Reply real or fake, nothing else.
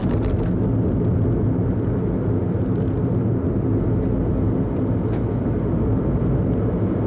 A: real